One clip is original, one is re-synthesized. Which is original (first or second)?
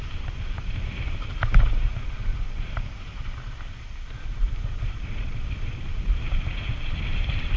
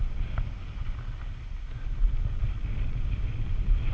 second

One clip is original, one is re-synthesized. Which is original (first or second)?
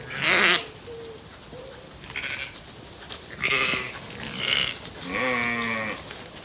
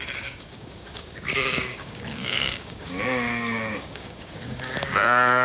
first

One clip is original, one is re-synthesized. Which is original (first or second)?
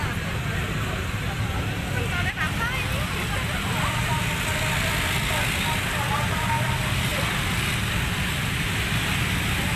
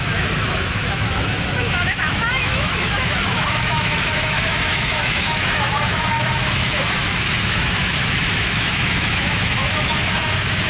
first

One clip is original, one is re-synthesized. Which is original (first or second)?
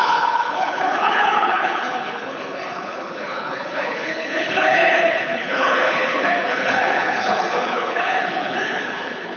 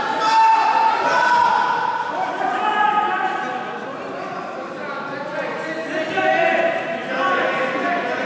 second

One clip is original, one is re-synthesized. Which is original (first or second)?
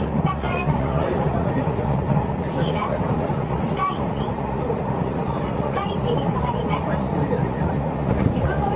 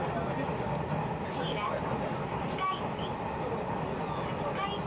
second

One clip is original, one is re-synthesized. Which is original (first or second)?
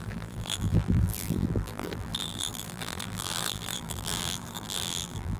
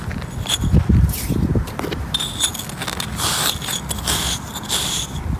second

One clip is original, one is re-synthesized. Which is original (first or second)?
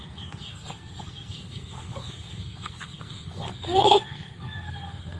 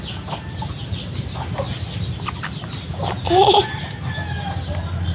second